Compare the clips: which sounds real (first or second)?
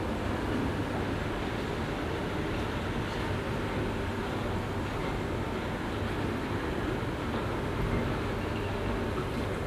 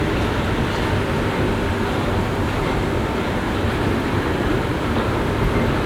first